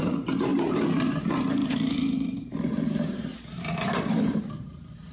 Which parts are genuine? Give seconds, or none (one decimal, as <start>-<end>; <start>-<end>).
none